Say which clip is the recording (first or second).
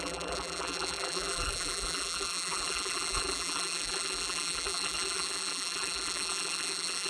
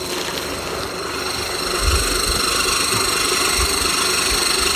second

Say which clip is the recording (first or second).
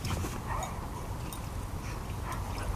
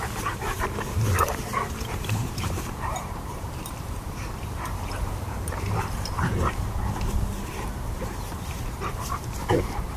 first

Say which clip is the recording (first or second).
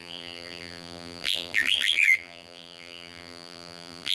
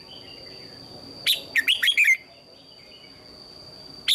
second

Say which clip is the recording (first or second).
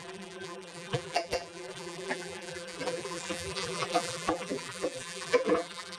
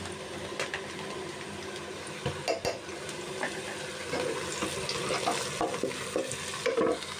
second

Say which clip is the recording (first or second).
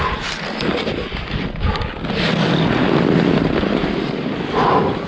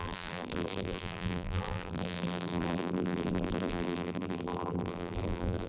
first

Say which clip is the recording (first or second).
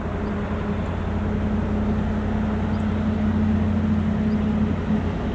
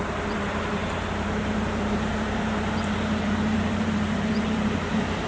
first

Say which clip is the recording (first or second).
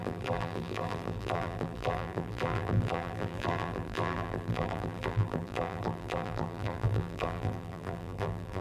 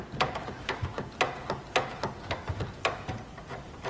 second